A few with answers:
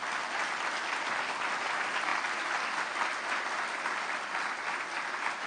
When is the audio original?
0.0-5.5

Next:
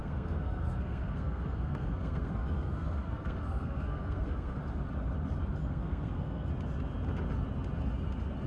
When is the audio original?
4.6-5.6; 6.5-8.5

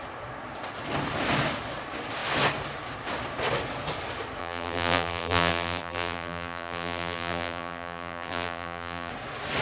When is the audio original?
0.0-4.4; 9.1-9.6

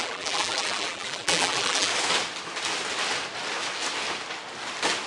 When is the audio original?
1.9-5.1

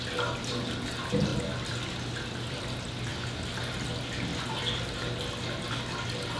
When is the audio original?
0.0-6.4

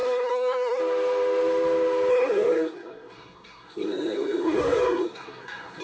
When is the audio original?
0.8-2.1